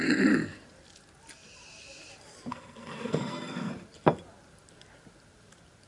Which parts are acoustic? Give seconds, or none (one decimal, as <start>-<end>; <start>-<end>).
0.0-2.5; 3.7-5.9